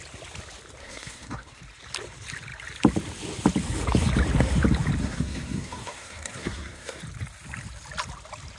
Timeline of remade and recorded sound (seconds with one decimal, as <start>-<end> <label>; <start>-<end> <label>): 0.0-0.8 recorded; 0.8-1.6 remade; 1.6-5.0 recorded; 5.0-7.0 remade; 7.0-8.6 recorded